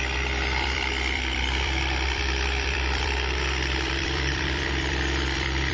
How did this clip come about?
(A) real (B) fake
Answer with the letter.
B